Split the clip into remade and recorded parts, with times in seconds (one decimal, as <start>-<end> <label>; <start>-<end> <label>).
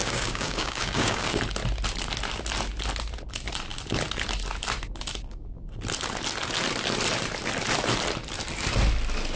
0.0-1.4 remade; 1.4-9.4 recorded